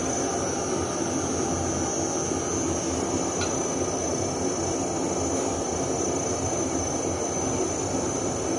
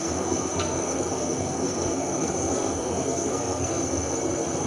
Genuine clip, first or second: first